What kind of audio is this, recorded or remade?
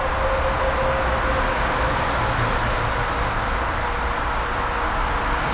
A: recorded